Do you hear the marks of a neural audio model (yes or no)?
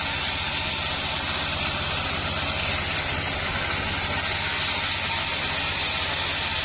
no